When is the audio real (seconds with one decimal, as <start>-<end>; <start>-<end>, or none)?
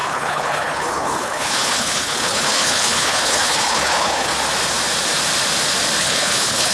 4.3-6.0